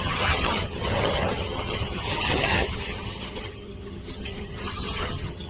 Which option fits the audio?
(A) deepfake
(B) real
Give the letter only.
A